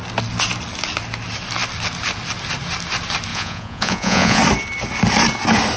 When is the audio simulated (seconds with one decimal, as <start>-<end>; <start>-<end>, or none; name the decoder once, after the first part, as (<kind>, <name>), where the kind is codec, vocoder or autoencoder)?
3.3-4.4 (vocoder, Vocos)